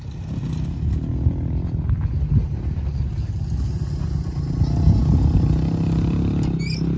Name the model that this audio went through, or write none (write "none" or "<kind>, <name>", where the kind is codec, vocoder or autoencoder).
none